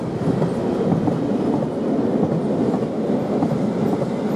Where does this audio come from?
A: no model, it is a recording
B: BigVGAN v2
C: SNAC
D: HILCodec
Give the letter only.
A